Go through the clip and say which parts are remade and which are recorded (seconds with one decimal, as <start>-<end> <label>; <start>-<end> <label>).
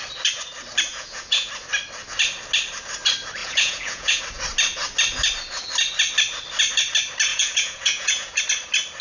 0.0-0.9 recorded; 0.9-1.5 remade; 1.5-3.4 recorded; 3.4-4.2 remade; 4.2-7.3 recorded; 7.3-8.4 remade; 8.4-9.0 recorded